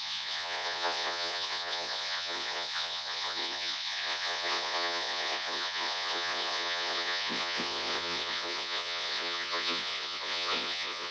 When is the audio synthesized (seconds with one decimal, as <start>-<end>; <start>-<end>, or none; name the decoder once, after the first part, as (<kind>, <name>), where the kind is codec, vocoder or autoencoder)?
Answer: 0.0-11.1 (vocoder, Vocos)